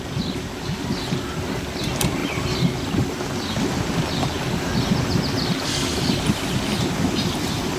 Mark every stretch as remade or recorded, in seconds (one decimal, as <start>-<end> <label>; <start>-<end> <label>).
0.0-2.2 remade; 2.2-6.3 recorded; 6.3-7.8 remade